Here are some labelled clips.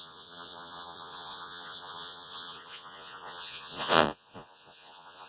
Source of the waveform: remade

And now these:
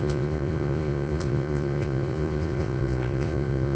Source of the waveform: remade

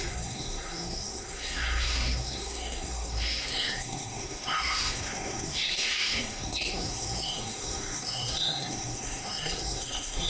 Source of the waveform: remade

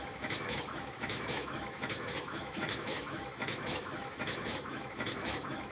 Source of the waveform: remade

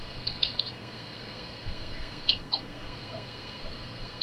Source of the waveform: remade